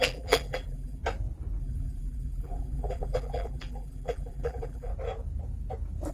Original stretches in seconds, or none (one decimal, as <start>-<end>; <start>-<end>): 1.0-1.6; 4.9-6.1